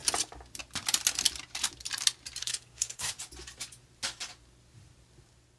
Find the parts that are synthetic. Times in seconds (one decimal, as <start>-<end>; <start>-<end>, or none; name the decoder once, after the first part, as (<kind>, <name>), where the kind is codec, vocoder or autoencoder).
2.4-3.1 (codec, SNAC)